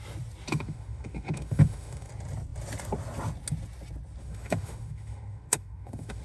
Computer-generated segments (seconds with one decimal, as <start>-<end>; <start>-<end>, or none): 0.5-2.1; 4.2-6.2